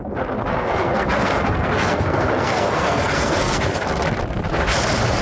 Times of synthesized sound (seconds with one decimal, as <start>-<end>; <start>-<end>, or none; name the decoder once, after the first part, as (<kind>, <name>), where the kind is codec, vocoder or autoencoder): 0.5-3.6 (codec, SNAC)